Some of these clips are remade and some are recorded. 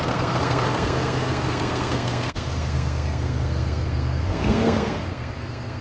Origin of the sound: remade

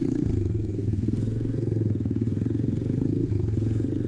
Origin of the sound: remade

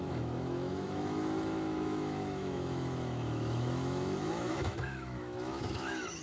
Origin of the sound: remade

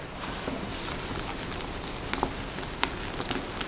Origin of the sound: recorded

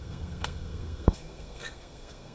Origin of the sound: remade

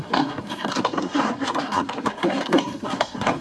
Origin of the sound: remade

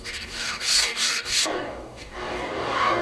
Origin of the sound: remade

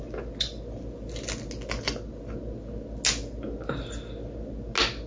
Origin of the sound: recorded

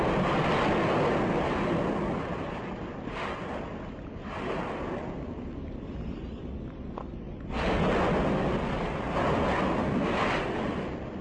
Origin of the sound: recorded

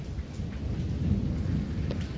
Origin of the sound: recorded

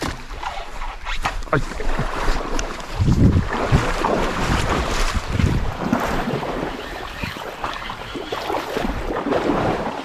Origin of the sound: remade